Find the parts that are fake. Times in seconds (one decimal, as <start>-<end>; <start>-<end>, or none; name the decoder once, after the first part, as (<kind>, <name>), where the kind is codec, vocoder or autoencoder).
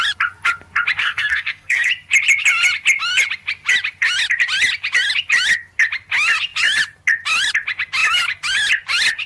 1.0-1.9 (codec, SNAC)